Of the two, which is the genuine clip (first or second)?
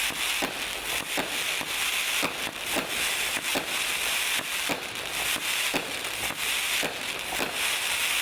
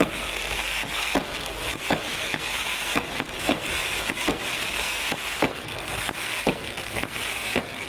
first